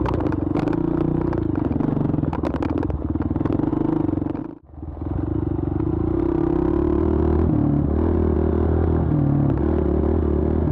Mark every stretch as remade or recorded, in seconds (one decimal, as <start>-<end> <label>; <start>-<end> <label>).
0.0-10.7 recorded